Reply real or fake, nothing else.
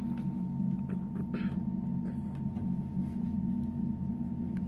real